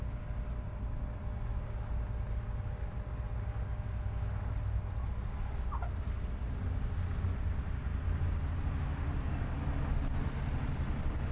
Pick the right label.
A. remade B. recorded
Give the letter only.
B